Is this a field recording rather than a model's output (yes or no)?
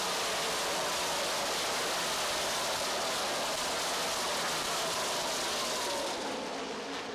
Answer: yes